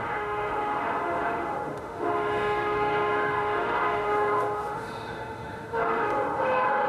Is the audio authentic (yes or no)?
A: no